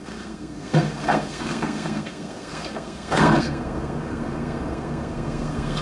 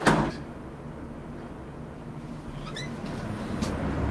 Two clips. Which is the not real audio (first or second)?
first